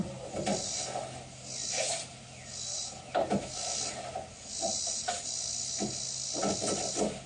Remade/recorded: recorded